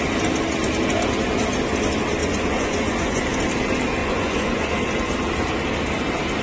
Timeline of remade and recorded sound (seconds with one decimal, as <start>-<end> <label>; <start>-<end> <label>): 0.0-2.2 recorded; 2.2-3.2 remade; 3.2-4.0 recorded; 4.0-4.7 remade; 4.7-6.4 recorded